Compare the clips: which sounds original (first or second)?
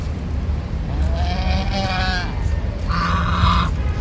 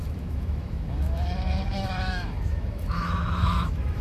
first